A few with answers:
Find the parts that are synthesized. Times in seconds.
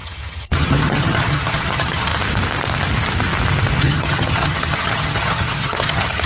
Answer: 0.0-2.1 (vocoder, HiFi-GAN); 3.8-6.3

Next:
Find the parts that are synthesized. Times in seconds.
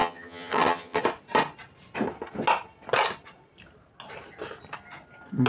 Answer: 0.0-1.0 (vocoder, HiFi-GAN)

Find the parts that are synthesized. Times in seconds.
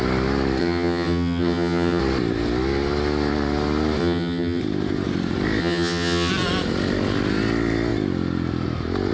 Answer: 0.6-2.0 (vocoder, HiFi-GAN); 4.0-4.6; 5.6-6.3